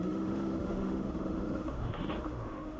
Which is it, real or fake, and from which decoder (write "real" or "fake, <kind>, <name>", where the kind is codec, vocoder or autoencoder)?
fake, autoencoder, DAC-VAE